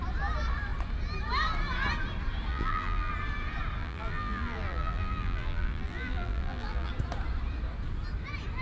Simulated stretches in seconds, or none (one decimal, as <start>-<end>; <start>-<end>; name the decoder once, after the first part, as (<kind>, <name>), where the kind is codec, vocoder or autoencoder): 2.5-3.1 (vocoder, BigVGAN v2); 3.8-6.9